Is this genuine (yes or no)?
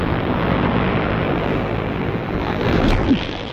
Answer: no